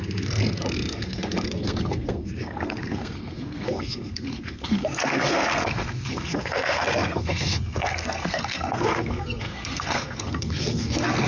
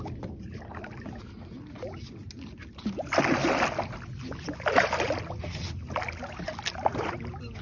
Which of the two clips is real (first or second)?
second